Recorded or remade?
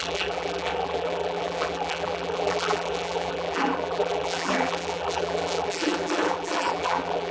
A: remade